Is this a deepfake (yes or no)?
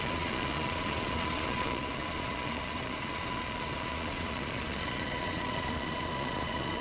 yes